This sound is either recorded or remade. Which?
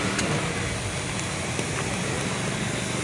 recorded